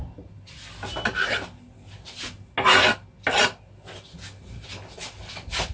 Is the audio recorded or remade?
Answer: recorded